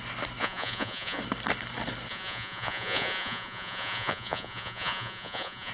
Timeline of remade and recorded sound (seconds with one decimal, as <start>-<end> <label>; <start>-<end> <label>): 0.0-0.4 recorded; 0.4-1.2 remade; 1.2-2.1 recorded; 2.1-5.7 remade